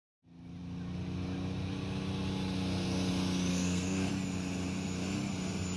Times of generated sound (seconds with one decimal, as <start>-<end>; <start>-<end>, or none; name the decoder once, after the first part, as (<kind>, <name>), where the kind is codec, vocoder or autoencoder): 3.5-4.1 (codec, SNAC)